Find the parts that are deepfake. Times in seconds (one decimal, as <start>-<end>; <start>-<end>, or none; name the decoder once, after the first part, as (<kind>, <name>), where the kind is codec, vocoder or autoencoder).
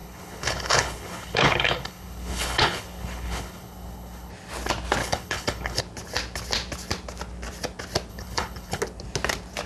0.0-4.3 (codec, HILCodec); 5.0-5.8; 8.1-8.8